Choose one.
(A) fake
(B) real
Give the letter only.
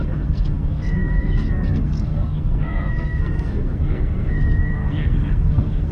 A